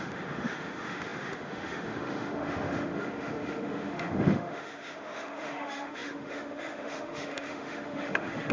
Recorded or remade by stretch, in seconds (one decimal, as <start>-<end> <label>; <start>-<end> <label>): 0.0-8.5 remade

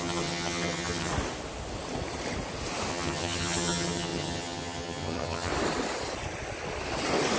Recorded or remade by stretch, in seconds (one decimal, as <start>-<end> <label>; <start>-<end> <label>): 0.0-1.1 remade; 1.1-2.9 recorded; 2.9-5.5 remade; 5.5-7.4 recorded

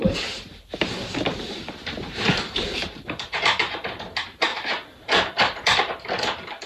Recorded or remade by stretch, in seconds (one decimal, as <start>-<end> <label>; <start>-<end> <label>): 0.0-4.0 remade; 4.0-4.5 recorded; 4.5-6.0 remade; 6.0-6.7 recorded

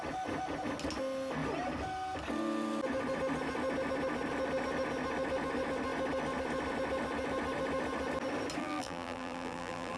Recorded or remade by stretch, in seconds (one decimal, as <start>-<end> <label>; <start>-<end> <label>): 0.0-8.6 recorded; 8.6-10.0 remade